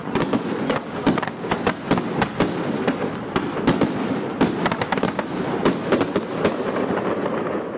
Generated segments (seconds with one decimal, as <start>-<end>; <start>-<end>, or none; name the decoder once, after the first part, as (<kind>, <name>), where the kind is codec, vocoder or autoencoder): 0.0-0.8 (vocoder, Vocos)